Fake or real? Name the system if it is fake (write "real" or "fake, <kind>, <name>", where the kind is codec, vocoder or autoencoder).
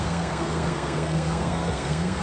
fake, codec, SNAC